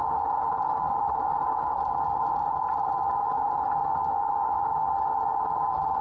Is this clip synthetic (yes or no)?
no